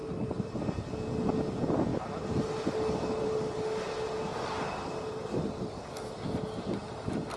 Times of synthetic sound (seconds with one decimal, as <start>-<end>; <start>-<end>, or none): 0.0-0.6